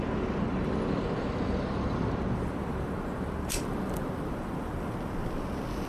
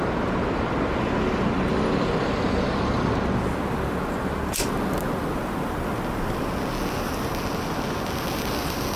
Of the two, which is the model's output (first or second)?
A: first